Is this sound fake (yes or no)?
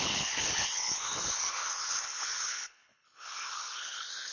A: yes